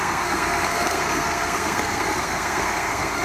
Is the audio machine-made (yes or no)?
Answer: yes